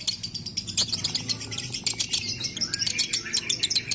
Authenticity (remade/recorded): recorded